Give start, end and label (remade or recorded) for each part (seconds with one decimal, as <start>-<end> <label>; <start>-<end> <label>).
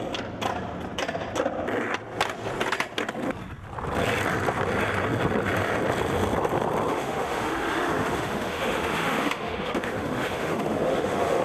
0.0-6.9 recorded; 6.9-11.4 remade